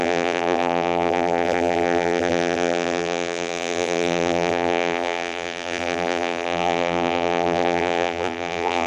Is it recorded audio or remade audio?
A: remade